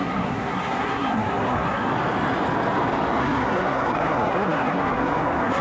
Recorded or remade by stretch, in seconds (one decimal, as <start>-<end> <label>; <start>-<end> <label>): 0.0-1.9 remade; 1.9-3.2 recorded; 3.2-5.6 remade

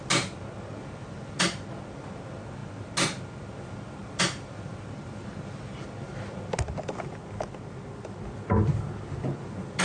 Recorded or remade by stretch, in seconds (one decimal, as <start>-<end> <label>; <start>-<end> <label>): 0.0-4.0 recorded; 4.0-4.7 remade; 4.7-9.8 recorded